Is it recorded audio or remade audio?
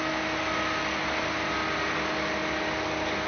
recorded